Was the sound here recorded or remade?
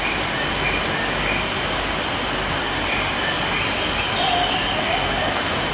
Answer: recorded